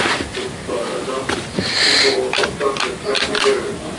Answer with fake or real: real